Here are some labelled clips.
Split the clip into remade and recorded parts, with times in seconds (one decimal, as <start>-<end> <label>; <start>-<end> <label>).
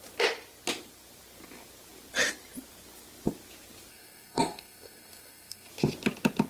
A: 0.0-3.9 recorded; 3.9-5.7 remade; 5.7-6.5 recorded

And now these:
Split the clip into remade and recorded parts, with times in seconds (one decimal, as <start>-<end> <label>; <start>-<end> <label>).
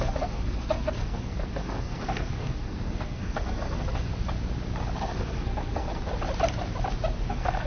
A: 0.0-4.1 remade; 4.1-5.0 recorded; 5.0-6.0 remade; 6.0-7.3 recorded; 7.3-7.7 remade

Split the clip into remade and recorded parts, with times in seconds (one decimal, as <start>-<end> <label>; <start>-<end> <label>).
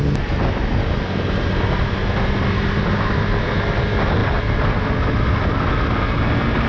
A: 0.0-6.7 recorded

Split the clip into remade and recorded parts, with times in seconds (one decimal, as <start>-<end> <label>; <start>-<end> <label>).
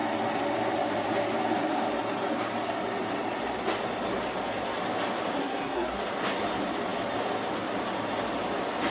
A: 0.0-5.4 recorded; 5.4-6.0 remade; 6.0-8.9 recorded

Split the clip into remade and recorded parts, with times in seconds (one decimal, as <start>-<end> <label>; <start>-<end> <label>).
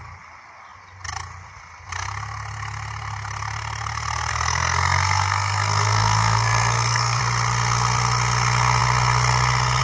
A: 0.0-4.3 recorded; 4.3-7.2 remade; 7.2-9.8 recorded